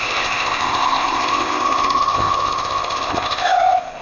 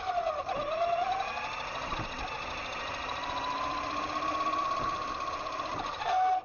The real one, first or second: second